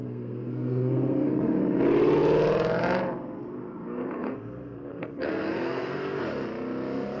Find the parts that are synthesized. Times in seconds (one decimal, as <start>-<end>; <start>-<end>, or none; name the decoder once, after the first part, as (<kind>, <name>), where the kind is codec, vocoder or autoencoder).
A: 0.0-1.6 (codec, SNAC); 3.7-6.2